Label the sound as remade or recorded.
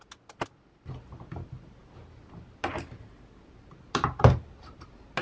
recorded